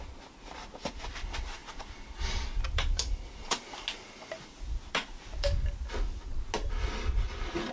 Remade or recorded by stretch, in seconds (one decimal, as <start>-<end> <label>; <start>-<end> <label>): 0.0-7.7 recorded